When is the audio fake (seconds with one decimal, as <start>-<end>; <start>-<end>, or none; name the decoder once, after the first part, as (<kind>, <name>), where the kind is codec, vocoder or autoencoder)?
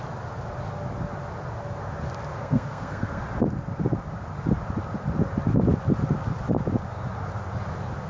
2.3-3.2 (codec, SNAC)